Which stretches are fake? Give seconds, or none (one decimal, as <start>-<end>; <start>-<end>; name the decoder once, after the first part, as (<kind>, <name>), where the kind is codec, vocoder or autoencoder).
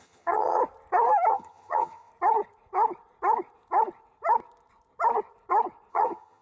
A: 0.0-0.6 (vocoder, HiFi-GAN); 1.3-2.1; 5.9-6.4